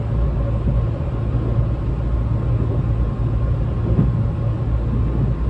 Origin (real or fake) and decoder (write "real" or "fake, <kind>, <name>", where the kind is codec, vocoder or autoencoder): real